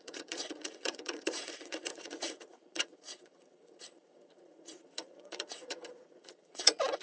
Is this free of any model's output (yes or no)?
no